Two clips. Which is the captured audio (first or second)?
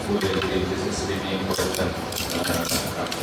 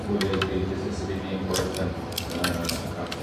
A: second